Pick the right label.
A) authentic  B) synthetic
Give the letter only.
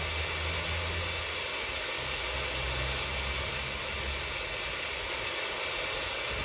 A